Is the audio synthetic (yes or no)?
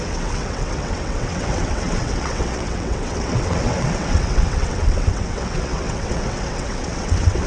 yes